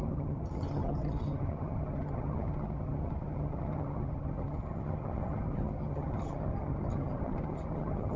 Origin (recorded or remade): remade